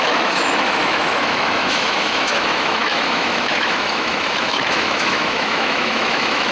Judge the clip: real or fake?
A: fake